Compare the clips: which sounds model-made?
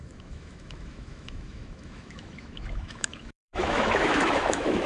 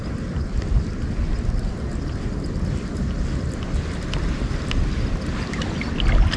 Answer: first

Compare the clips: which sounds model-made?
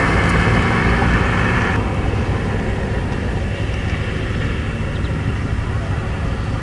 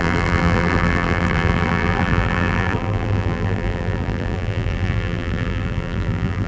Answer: second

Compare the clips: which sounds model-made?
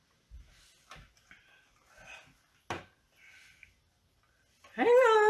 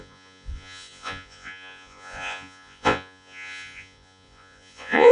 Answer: second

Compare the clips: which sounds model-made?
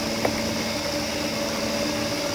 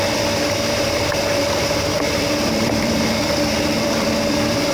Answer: second